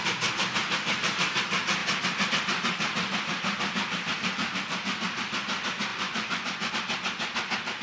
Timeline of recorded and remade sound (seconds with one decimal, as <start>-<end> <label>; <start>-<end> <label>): 0.0-5.9 recorded; 5.9-6.7 remade; 6.7-7.8 recorded